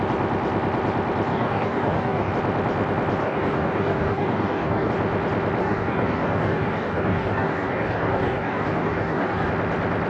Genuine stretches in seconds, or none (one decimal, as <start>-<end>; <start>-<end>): 0.0-1.3; 2.3-3.2; 4.9-5.6; 9.5-10.1